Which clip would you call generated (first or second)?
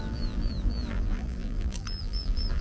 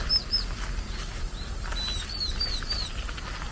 first